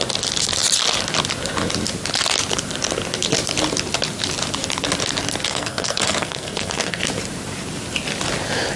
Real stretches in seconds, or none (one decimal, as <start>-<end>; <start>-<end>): 0.0-5.5; 7.0-8.8